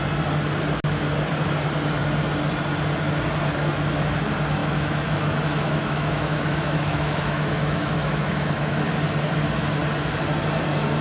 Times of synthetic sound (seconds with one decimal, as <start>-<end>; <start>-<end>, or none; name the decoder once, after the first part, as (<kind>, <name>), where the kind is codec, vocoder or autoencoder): 4.6-8.8 (autoencoder, DAC-VAE)